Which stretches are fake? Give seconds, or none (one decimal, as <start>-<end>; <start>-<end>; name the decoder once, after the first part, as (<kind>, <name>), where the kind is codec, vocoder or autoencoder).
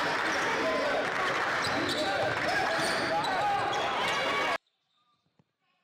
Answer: 2.0-3.1 (vocoder, BigVGAN v2)